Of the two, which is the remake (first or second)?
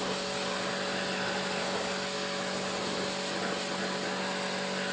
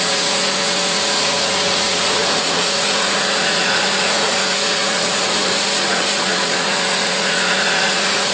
second